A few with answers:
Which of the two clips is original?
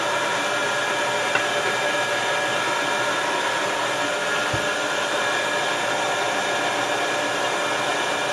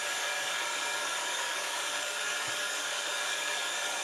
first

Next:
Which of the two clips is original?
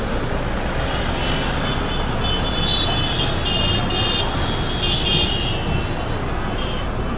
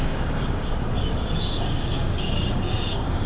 first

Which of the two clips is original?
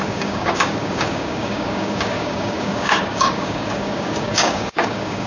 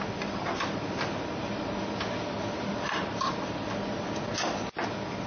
second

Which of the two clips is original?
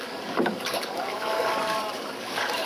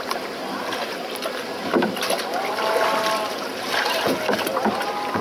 second